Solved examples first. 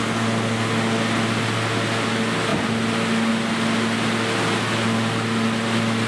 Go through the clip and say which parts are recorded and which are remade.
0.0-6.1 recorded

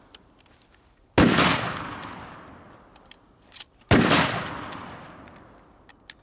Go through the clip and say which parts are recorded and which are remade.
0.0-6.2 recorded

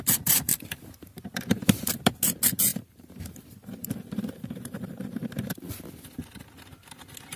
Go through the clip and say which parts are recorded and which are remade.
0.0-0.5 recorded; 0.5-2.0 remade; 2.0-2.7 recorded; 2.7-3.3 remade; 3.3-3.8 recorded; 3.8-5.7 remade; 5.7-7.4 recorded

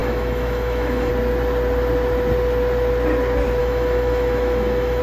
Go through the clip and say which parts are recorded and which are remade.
0.0-1.1 remade; 1.1-3.6 recorded; 3.6-5.0 remade

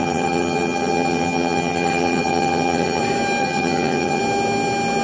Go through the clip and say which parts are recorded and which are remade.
0.0-3.0 remade; 3.0-3.4 recorded; 3.4-4.2 remade; 4.2-5.0 recorded

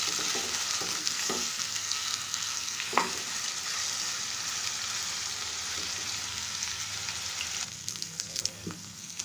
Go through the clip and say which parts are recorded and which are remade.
0.0-1.0 recorded; 1.0-3.1 remade; 3.1-6.3 recorded; 6.3-6.9 remade; 6.9-7.7 recorded; 7.7-9.2 remade